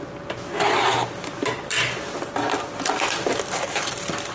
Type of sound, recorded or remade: recorded